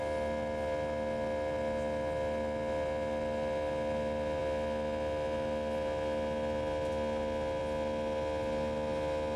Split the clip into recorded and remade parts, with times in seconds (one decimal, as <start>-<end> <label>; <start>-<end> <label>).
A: 0.0-9.4 recorded